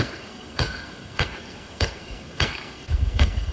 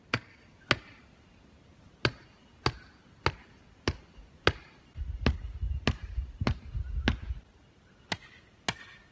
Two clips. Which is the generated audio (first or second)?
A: first